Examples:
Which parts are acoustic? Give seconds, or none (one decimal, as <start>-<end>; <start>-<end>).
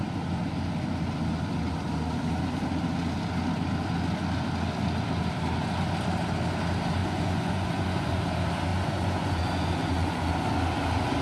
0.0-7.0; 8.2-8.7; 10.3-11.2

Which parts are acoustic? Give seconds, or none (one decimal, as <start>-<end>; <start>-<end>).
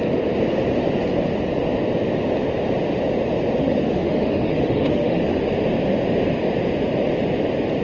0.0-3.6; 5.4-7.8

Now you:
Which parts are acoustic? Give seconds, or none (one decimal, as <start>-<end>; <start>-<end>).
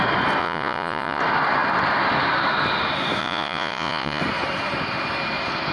0.0-0.4; 1.2-3.2; 4.2-5.7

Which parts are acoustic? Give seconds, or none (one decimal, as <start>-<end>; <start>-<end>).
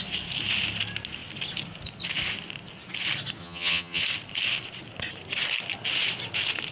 0.0-3.4; 4.0-6.7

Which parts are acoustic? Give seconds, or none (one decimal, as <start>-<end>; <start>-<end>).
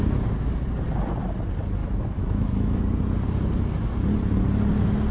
0.0-1.8; 2.8-5.1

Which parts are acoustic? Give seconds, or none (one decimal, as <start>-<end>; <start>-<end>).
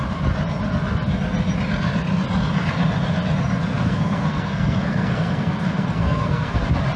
0.0-3.7; 6.6-7.0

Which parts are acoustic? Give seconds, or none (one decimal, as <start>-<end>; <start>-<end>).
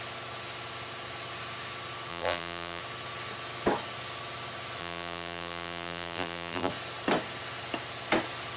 0.0-2.1; 2.8-4.8; 6.7-8.6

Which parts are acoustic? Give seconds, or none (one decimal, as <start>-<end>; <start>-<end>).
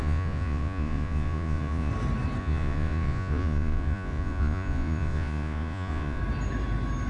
1.9-2.4; 6.2-7.1